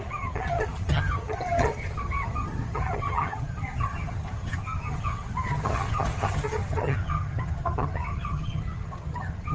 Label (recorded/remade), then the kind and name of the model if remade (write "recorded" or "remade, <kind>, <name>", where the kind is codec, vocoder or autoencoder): remade, vocoder, HiFi-GAN